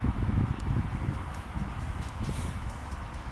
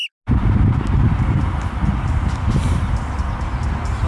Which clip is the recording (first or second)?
second